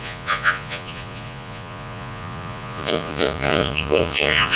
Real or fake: fake